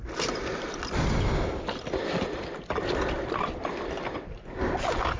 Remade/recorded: recorded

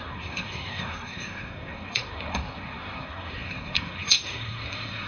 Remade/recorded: remade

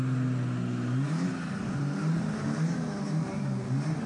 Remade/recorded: recorded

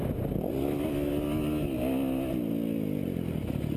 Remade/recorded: recorded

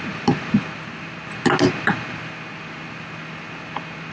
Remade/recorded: recorded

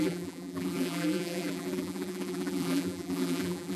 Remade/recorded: remade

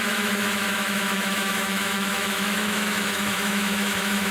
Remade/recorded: remade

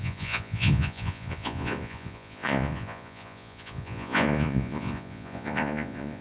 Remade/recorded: remade